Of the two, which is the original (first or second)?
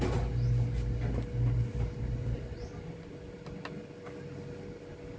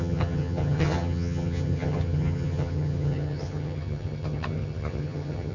first